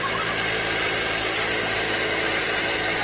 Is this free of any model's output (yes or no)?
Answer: yes